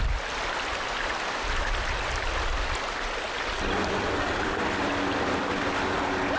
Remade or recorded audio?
recorded